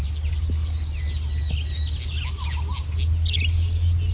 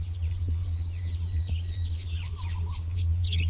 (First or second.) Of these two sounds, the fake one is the second